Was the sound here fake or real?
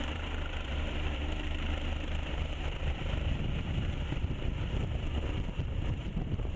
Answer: fake